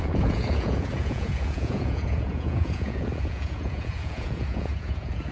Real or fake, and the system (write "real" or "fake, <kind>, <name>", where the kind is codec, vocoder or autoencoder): fake, vocoder, Vocos